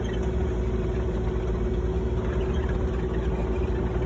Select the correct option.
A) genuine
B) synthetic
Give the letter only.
A